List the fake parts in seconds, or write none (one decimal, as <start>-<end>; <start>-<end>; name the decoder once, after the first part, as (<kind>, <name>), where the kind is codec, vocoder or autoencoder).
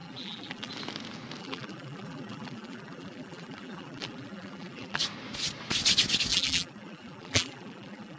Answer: 0.0-0.7 (vocoder, BigVGAN v2); 1.4-5.0; 6.3-8.2